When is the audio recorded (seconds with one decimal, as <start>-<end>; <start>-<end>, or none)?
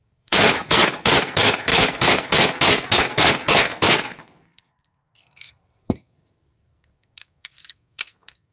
none